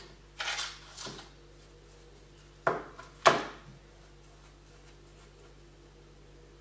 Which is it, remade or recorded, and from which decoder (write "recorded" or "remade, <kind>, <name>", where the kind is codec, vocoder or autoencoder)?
recorded